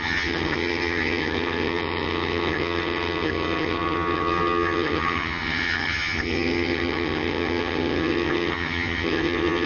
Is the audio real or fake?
fake